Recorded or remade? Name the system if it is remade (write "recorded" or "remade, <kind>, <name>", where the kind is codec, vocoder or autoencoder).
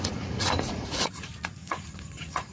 remade, vocoder, Vocos